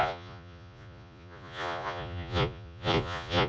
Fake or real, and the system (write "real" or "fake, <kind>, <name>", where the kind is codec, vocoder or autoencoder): fake, vocoder, Vocos